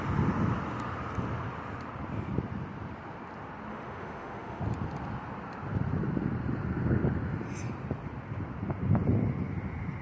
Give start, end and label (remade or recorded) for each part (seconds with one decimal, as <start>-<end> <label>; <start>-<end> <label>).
0.0-3.7 recorded; 3.7-4.6 remade; 4.6-10.0 recorded